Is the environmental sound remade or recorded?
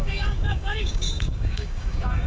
remade